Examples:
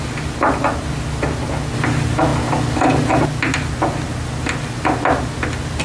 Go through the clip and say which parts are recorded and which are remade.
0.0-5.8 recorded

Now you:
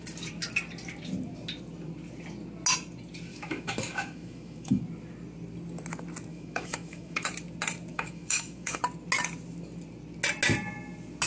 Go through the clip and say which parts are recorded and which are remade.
0.0-3.3 recorded; 3.3-4.8 remade; 4.8-6.3 recorded; 6.3-7.3 remade; 7.3-7.9 recorded; 7.9-8.8 remade; 8.8-11.3 recorded

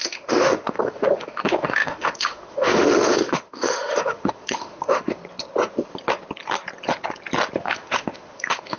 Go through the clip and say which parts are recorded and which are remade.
0.0-5.2 remade; 5.2-7.6 recorded; 7.6-8.8 remade

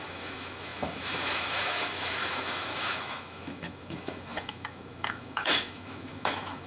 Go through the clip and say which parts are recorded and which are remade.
0.0-6.7 remade

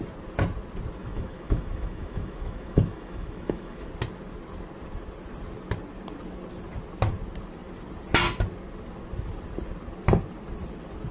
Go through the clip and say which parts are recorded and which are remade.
0.0-1.0 recorded; 1.0-3.9 remade; 3.9-11.1 recorded

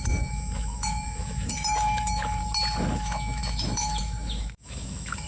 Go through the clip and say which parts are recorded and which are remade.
0.0-2.4 remade; 2.4-2.9 recorded; 2.9-5.3 remade